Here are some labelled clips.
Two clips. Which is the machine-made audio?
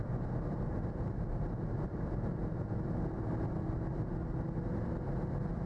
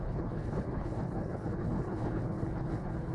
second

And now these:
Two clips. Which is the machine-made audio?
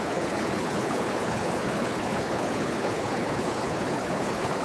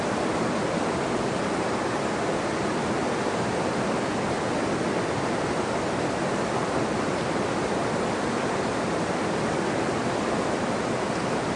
first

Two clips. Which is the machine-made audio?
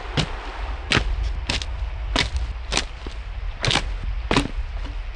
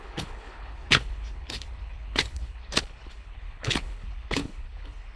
second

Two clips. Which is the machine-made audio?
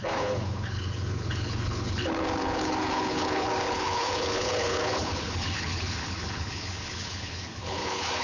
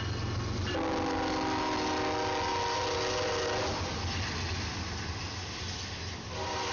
first